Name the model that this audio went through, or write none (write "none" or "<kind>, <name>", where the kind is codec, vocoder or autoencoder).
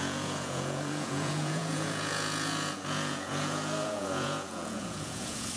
vocoder, Vocos